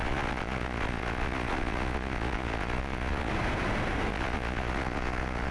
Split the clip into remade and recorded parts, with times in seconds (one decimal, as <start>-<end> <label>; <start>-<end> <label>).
0.0-3.3 remade; 3.3-4.1 recorded; 4.1-5.5 remade